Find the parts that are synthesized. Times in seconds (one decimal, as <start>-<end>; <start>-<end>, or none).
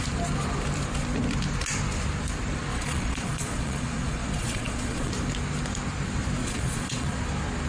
2.7-5.1; 6.4-7.2